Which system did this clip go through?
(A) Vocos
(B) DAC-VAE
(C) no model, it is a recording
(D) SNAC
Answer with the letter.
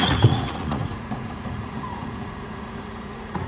A